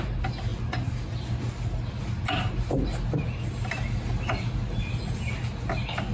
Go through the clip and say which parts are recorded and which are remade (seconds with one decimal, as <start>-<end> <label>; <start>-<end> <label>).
0.0-6.1 recorded

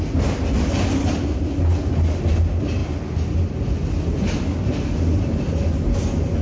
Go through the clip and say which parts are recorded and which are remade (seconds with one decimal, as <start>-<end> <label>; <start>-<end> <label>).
0.0-6.4 recorded

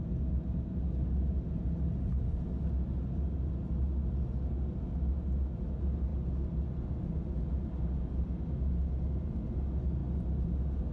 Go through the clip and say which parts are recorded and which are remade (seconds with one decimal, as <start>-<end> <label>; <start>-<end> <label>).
0.0-10.9 recorded

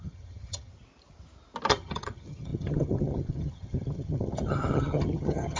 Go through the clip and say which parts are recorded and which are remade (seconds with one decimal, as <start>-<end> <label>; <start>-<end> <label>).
0.0-0.7 remade; 0.7-1.7 recorded; 1.7-5.6 remade

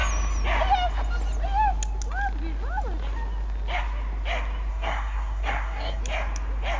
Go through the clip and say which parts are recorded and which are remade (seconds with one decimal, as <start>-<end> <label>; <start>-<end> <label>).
0.0-4.7 recorded; 4.7-6.0 remade; 6.0-6.8 recorded

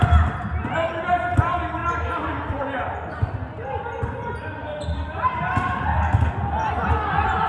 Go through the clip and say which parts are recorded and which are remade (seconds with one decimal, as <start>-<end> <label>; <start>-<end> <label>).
0.0-7.5 recorded

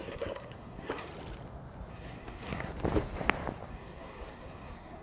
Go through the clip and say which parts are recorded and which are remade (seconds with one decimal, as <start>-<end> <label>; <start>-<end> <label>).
0.0-1.1 remade; 1.1-1.9 recorded; 1.9-2.7 remade; 2.7-3.7 recorded; 3.7-5.0 remade

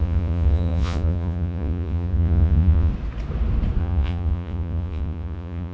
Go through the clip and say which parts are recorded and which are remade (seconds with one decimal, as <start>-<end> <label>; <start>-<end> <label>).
0.0-2.9 remade; 2.9-3.8 recorded; 3.8-5.7 remade